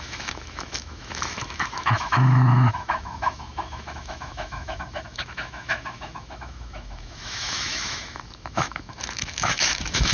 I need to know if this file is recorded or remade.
remade